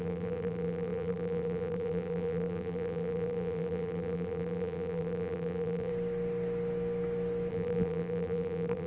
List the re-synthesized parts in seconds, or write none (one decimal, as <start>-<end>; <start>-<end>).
0.0-5.9; 7.5-8.9